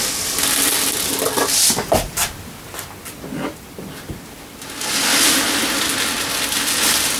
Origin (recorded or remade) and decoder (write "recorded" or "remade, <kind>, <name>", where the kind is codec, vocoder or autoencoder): recorded